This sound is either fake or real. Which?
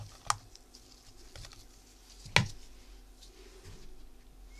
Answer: real